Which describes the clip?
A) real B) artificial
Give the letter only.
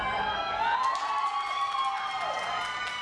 A